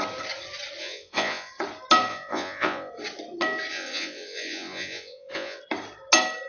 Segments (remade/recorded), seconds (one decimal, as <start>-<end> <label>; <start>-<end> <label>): 0.0-0.8 recorded; 0.8-1.5 remade; 1.5-2.1 recorded; 2.1-2.9 remade; 2.9-3.7 recorded; 3.7-5.6 remade; 5.6-6.5 recorded